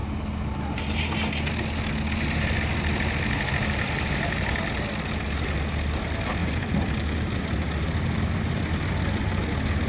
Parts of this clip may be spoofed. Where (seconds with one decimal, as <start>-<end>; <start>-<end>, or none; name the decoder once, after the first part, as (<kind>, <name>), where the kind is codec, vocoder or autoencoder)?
none